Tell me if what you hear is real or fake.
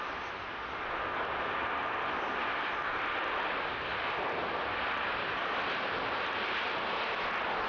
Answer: real